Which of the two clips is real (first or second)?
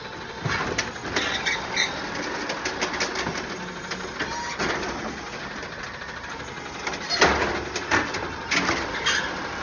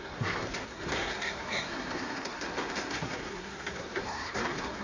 first